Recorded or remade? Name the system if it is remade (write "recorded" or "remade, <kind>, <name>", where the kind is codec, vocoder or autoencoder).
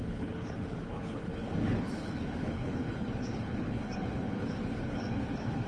remade, codec, HILCodec